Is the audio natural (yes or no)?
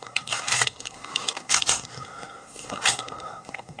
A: no